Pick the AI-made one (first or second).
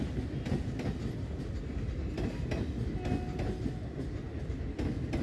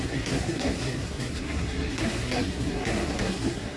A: second